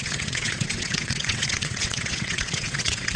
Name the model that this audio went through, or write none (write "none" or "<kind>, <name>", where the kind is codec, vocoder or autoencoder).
vocoder, WaveNeXt